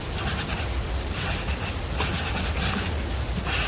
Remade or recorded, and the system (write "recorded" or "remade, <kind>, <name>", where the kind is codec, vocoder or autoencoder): recorded